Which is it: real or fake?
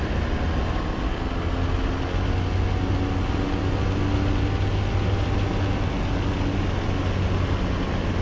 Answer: real